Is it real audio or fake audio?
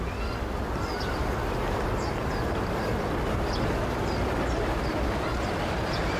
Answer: real